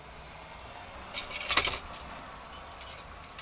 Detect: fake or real real